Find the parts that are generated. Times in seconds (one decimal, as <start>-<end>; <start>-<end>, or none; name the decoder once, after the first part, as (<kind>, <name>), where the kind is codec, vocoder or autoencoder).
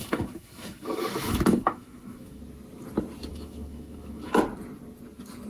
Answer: 0.0-2.4 (autoencoder, DAC-VAE); 3.3-4.4